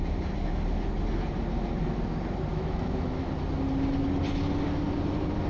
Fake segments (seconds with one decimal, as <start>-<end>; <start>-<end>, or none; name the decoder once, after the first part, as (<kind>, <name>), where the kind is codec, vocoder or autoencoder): 2.5-3.3 (autoencoder, DAC-VAE)